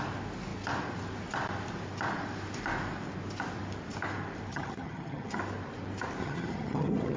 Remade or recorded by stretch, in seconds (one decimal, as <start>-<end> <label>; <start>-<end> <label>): 0.0-4.5 recorded; 4.5-5.4 remade; 5.4-6.2 recorded; 6.2-7.2 remade